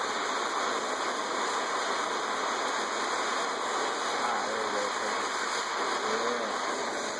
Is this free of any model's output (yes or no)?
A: yes